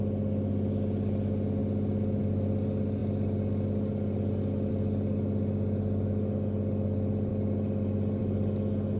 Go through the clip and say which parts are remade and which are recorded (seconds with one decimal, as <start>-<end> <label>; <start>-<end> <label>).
0.0-9.0 recorded

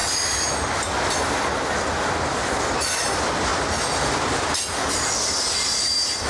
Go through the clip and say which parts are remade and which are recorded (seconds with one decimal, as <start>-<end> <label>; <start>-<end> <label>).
0.0-6.3 recorded

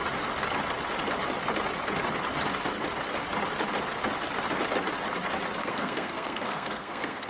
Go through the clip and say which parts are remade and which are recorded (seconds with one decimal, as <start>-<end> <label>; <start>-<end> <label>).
0.0-5.6 recorded; 5.6-7.3 remade